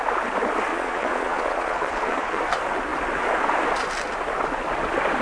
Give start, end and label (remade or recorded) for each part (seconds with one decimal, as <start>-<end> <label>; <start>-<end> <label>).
0.0-0.7 recorded; 0.7-2.4 remade; 2.4-5.2 recorded